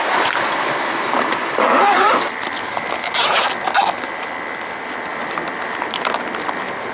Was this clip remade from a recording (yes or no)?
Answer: no